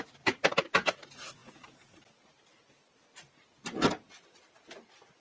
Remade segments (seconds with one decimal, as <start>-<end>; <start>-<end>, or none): none